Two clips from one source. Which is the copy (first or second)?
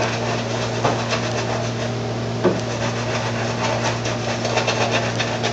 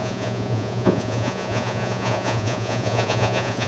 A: second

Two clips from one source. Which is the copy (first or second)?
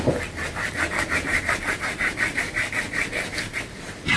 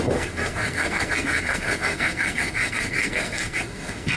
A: second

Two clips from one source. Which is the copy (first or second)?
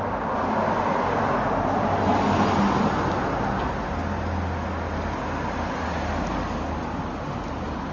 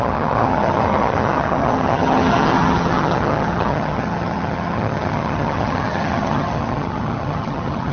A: second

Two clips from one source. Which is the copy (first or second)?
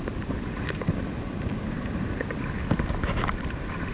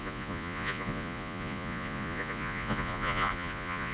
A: second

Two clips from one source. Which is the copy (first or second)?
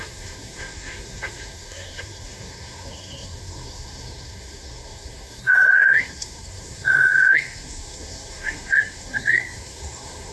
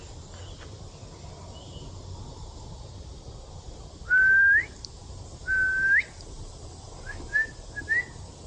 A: first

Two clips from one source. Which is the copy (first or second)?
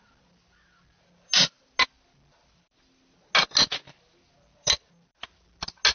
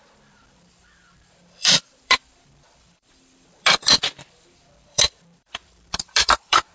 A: second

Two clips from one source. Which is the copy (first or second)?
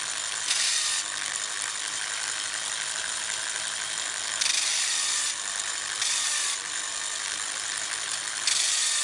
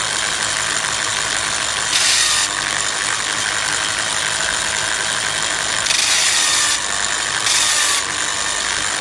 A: first